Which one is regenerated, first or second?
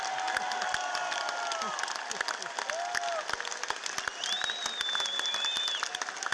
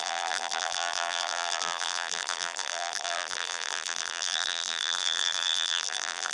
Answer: second